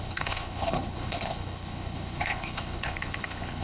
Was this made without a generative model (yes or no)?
no